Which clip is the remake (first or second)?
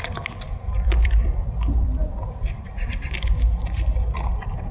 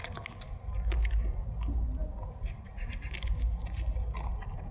first